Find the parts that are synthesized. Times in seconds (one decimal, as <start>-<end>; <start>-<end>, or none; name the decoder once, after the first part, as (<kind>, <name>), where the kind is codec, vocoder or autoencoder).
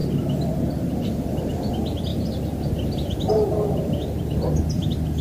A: 0.7-2.1 (vocoder, BigVGAN v2); 3.3-4.0; 4.6-5.2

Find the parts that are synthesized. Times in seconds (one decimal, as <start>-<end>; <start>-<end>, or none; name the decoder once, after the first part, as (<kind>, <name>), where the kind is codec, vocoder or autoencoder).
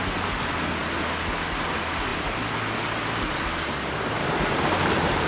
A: none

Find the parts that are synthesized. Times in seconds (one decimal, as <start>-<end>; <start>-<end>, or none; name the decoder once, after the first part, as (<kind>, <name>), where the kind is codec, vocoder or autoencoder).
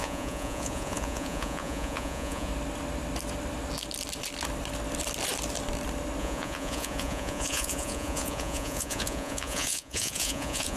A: 0.0-2.5 (vocoder, Vocos); 6.2-10.8